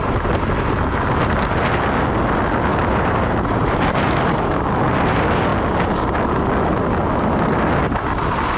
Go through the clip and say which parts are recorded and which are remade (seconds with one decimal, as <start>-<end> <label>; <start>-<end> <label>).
0.0-2.7 recorded; 2.7-4.6 remade; 4.6-8.6 recorded